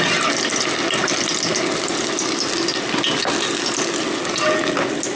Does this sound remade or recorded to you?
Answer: recorded